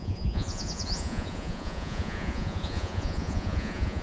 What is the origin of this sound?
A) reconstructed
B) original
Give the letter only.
A